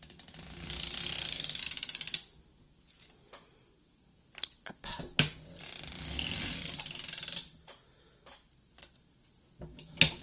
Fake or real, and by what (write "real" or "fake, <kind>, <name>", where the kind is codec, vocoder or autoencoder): real